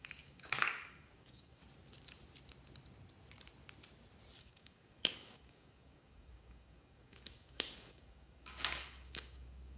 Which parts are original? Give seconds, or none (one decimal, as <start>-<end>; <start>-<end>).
1.6-4.4